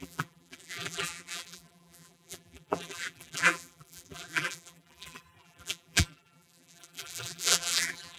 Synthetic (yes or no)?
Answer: yes